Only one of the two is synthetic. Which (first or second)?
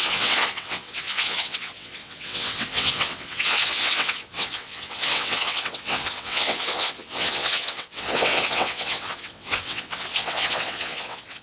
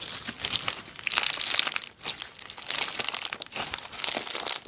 first